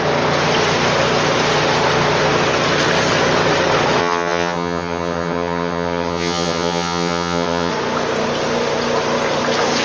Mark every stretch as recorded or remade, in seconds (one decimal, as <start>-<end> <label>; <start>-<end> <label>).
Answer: 0.0-4.0 recorded; 4.0-7.7 remade; 7.7-9.8 recorded